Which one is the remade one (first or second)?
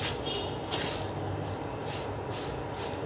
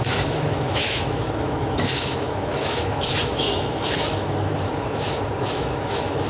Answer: second